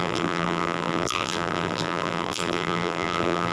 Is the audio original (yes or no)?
no